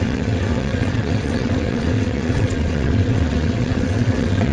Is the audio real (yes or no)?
no